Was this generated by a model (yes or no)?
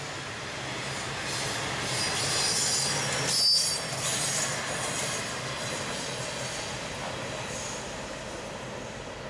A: no